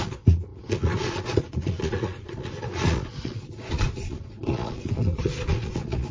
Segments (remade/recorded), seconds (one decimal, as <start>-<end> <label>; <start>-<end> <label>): 0.0-6.1 remade